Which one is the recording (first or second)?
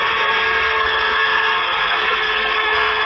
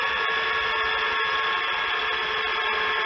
second